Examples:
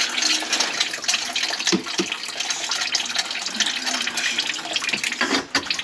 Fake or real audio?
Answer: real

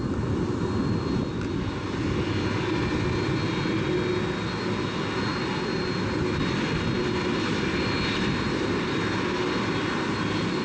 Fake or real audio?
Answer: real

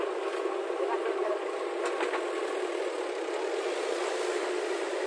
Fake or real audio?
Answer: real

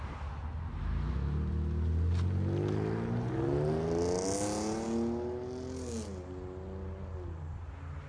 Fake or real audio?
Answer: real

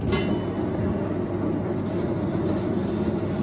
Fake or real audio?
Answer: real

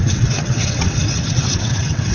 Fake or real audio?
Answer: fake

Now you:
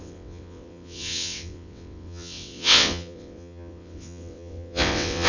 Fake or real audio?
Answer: fake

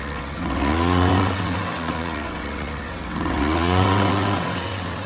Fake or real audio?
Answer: fake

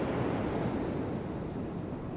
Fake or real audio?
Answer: real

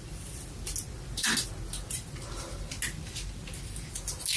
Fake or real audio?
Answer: real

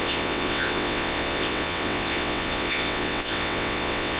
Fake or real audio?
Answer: fake